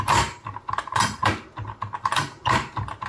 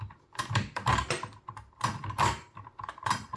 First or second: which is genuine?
first